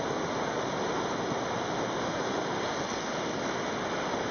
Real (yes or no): yes